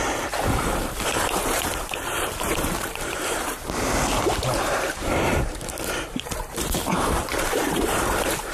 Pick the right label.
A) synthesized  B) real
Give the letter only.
A